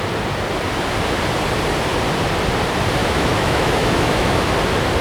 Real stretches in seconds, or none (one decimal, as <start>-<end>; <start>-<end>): 0.0-3.0; 4.5-5.0